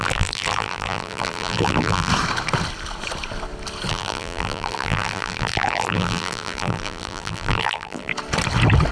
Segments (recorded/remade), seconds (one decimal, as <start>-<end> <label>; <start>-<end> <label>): 0.0-2.1 remade; 2.1-3.9 recorded; 3.9-8.1 remade; 8.1-8.9 recorded